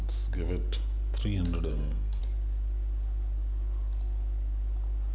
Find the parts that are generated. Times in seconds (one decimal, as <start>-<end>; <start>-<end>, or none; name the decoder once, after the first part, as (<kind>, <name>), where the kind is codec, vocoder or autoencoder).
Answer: 1.7-2.2 (codec, SNAC)